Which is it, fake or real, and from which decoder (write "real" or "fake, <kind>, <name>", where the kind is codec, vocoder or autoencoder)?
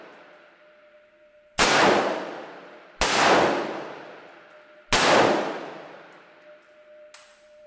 real